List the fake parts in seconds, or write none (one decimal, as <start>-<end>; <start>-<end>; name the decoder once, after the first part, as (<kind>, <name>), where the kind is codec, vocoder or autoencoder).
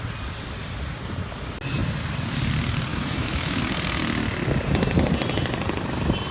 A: 2.9-3.6 (autoencoder, DAC-VAE)